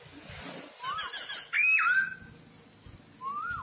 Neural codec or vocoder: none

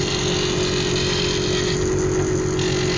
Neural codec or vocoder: none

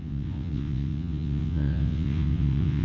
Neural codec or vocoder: vocoder, WaveNeXt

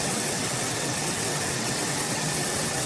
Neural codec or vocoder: vocoder, WaveNeXt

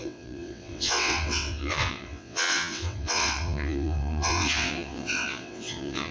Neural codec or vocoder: vocoder, WaveNeXt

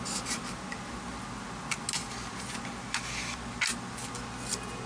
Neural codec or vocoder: none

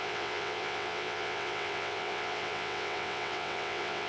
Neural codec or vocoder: vocoder, WaveNeXt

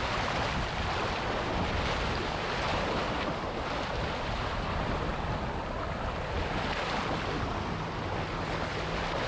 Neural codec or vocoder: none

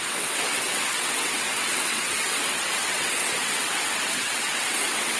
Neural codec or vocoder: vocoder, WaveNeXt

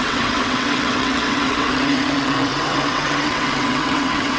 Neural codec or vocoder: vocoder, WaveNeXt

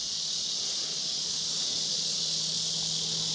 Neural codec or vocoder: none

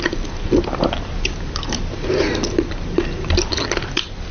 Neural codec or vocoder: none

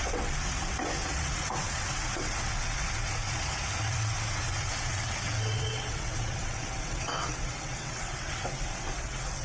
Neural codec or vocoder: vocoder, WaveNeXt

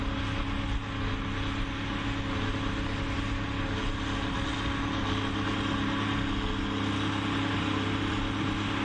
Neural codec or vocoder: none